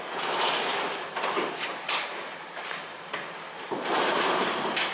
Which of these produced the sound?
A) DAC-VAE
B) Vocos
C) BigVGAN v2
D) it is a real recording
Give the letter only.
C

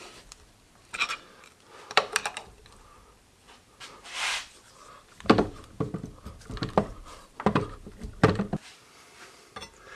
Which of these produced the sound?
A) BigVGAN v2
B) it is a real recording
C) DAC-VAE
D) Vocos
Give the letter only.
A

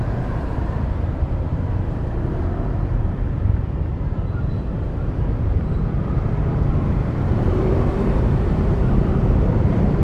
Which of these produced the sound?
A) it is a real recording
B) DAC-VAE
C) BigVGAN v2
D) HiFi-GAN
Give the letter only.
C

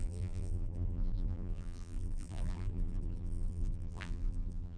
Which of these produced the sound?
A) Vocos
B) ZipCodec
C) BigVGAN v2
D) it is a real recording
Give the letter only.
C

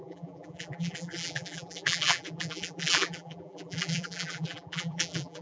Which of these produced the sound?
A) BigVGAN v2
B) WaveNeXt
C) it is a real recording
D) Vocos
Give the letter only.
A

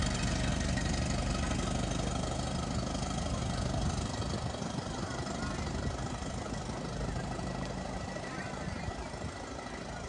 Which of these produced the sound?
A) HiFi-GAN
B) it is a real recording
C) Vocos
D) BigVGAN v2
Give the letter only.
B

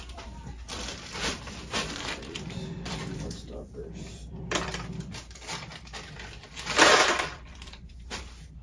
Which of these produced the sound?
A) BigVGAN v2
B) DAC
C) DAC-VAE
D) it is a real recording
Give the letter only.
A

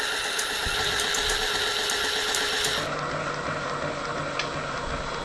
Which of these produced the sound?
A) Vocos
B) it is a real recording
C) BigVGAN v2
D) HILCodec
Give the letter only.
B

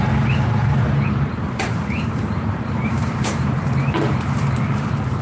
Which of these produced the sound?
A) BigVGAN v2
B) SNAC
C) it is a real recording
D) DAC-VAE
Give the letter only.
A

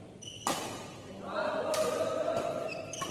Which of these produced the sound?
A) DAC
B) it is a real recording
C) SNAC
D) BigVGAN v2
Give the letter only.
D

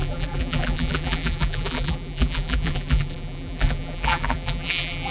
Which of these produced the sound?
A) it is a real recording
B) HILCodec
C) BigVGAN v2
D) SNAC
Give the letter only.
C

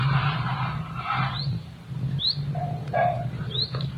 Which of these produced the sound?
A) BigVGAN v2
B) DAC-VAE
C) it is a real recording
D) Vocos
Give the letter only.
A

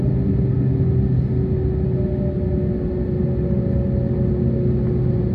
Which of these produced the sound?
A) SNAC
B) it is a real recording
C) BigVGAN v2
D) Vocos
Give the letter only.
B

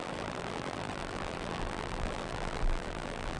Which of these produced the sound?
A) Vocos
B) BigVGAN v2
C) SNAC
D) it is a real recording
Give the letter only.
B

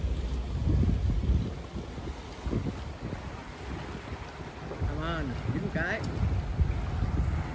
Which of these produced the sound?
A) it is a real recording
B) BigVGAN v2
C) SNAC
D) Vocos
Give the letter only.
A